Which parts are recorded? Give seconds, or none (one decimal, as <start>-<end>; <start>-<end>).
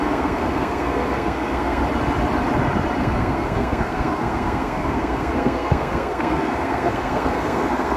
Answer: 1.8-3.0